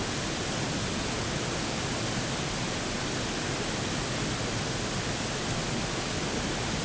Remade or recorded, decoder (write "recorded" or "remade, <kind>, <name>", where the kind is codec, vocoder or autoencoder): recorded